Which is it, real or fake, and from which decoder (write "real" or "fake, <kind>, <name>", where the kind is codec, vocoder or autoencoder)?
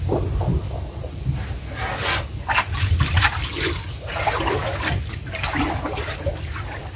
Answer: real